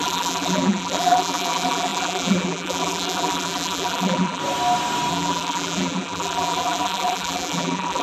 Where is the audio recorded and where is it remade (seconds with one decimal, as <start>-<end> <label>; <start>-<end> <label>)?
0.0-4.4 remade; 4.4-5.1 recorded; 5.1-8.0 remade